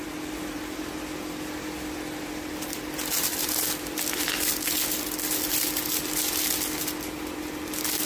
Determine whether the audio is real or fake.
real